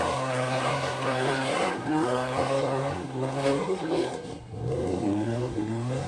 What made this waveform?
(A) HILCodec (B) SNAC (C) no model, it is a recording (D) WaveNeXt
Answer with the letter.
B